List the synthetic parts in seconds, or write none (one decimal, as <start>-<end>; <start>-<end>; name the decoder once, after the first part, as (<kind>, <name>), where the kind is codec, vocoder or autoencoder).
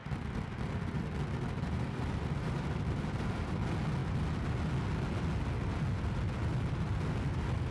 0.0-3.5 (vocoder, BigVGAN v2)